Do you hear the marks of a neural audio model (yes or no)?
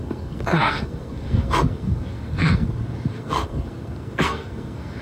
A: yes